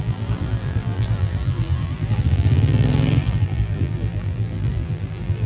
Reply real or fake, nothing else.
fake